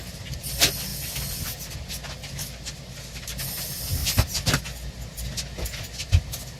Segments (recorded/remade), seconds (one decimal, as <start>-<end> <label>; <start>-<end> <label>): 0.0-6.6 recorded